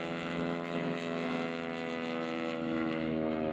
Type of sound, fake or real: fake